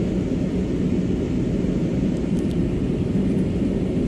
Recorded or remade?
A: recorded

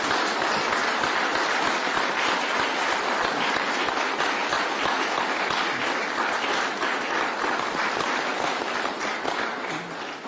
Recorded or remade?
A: recorded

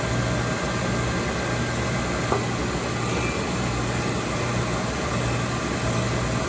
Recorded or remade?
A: recorded